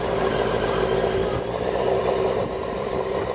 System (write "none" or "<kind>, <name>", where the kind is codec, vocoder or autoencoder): none